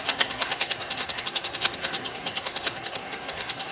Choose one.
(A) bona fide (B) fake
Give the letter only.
B